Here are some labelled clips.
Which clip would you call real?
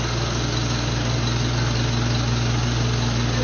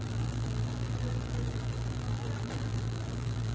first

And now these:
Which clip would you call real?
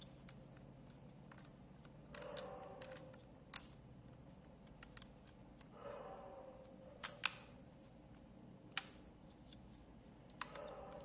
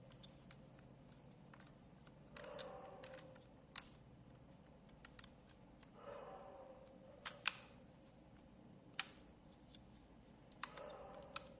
first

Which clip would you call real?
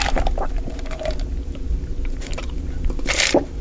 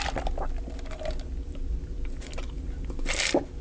second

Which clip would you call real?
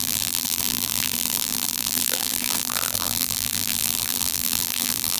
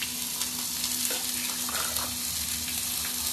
second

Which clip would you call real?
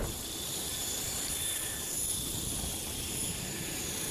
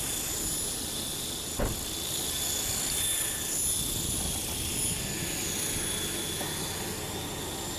second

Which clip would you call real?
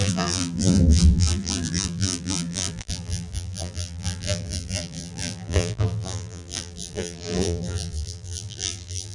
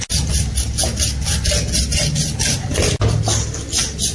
second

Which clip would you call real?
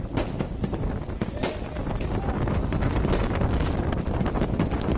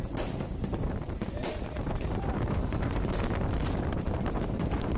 first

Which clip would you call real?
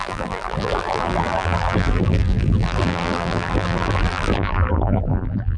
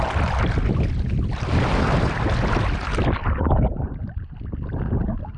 second